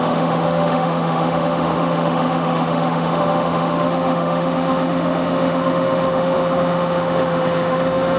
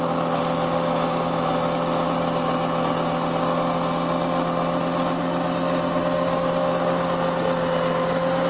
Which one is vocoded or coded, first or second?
first